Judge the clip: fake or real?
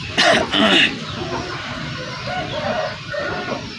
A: real